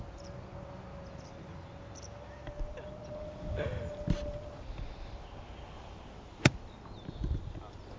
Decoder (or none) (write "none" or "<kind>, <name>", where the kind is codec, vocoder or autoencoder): none